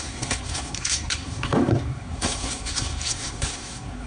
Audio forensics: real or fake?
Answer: fake